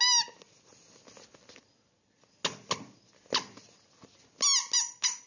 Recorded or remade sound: recorded